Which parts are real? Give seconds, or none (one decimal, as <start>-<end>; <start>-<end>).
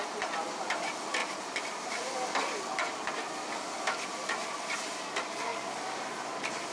0.0-1.2; 2.1-5.5